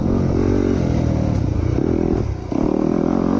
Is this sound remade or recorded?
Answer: recorded